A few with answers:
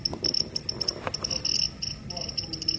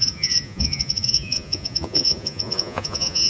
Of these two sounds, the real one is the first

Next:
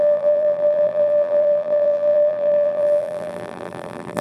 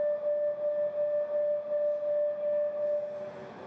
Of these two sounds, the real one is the second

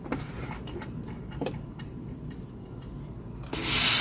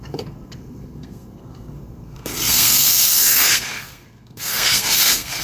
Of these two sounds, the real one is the first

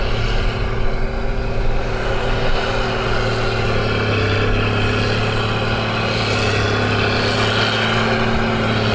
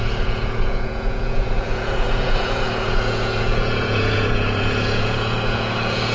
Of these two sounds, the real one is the first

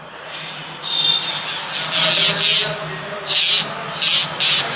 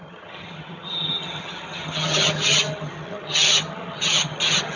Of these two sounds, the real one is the first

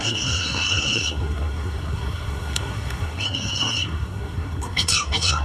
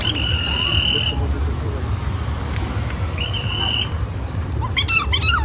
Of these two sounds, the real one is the second